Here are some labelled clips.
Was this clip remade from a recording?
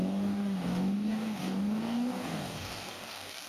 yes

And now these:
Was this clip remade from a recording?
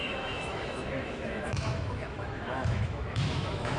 yes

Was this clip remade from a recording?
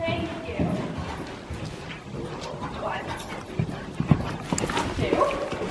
no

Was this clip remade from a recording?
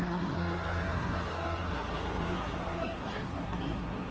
yes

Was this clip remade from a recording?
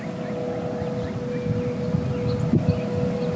no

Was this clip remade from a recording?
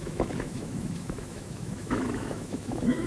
yes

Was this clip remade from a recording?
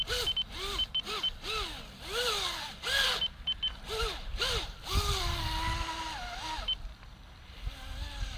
no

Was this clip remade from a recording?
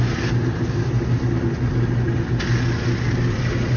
no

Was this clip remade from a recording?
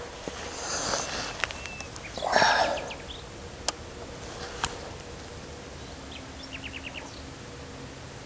no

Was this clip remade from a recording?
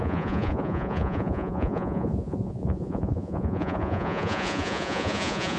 yes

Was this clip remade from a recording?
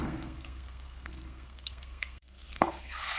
yes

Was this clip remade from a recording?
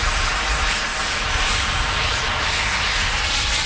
no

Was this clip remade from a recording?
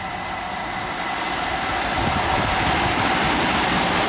no